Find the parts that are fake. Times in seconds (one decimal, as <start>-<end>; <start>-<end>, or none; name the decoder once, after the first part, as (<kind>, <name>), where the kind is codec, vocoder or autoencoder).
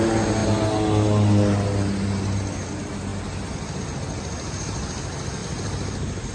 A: none